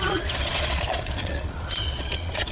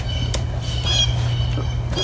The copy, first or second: first